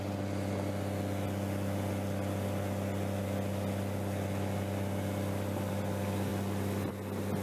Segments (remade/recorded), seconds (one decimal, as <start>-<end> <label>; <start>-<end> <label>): 0.0-7.4 recorded